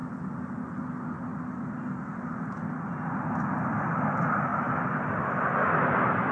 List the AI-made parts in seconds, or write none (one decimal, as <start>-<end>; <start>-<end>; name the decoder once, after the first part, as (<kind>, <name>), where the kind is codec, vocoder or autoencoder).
none